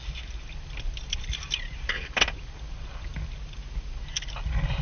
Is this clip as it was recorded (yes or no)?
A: yes